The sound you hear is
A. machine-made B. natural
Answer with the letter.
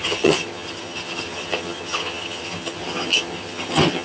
A